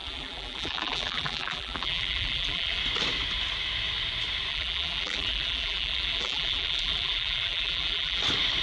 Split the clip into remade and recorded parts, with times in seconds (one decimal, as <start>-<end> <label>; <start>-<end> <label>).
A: 0.0-2.8 remade; 2.8-4.5 recorded; 4.5-8.2 remade; 8.2-8.6 recorded